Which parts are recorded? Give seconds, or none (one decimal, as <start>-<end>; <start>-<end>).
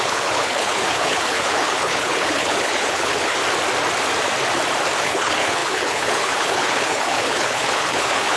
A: 3.4-5.0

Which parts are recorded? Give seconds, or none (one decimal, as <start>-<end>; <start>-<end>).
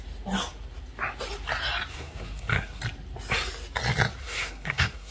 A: 0.0-1.9; 2.8-4.2